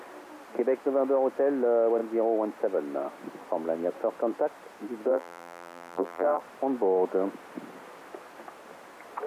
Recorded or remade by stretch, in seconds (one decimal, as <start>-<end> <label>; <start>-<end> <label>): 0.0-5.1 recorded; 5.1-6.4 remade; 6.4-9.3 recorded